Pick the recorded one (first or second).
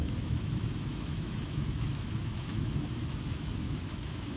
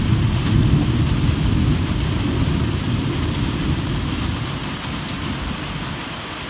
second